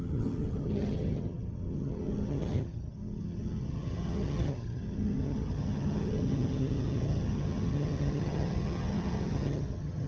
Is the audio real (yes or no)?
no